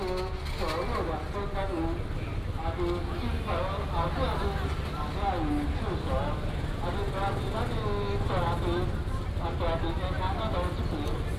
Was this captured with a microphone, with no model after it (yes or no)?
yes